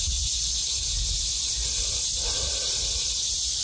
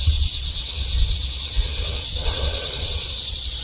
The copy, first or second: second